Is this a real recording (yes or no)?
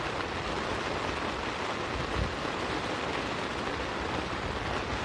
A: yes